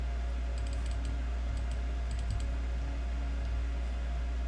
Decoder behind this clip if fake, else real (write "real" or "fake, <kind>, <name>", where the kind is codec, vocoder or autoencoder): real